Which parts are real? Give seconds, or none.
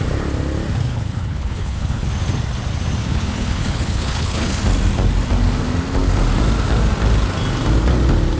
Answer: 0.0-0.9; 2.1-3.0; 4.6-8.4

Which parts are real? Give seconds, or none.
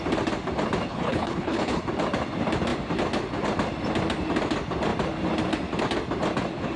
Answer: 0.0-0.9; 1.8-6.8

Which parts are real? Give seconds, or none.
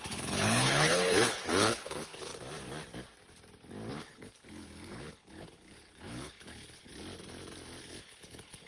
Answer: 2.3-3.9; 6.9-7.8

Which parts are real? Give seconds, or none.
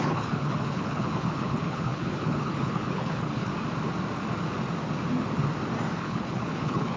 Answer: 3.5-6.0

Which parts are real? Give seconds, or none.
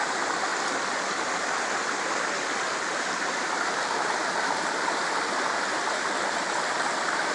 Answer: 0.0-7.3